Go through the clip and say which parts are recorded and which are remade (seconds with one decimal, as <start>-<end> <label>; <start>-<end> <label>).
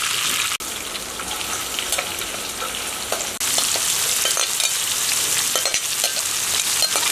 0.0-7.1 recorded